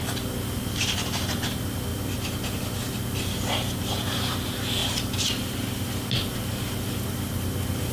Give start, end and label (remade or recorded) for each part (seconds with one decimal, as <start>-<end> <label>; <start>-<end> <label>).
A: 0.0-7.9 recorded